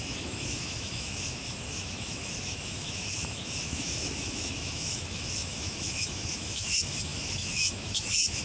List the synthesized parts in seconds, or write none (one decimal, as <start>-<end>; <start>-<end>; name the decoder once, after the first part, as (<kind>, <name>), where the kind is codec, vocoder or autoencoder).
0.0-8.4 (autoencoder, DAC-VAE)